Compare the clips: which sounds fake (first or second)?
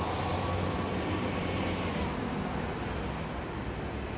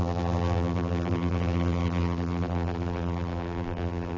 second